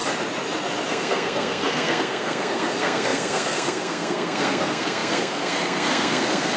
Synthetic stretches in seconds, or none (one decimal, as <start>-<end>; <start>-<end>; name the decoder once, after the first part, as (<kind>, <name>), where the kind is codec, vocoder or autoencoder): 0.9-6.6 (codec, SNAC)